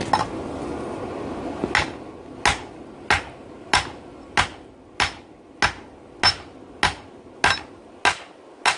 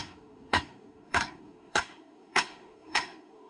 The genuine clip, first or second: first